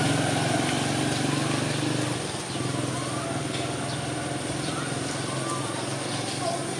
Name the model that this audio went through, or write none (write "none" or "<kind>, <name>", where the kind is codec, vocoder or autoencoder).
none